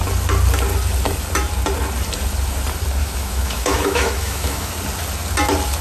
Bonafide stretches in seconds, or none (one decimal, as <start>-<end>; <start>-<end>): 0.0-3.0; 4.7-5.8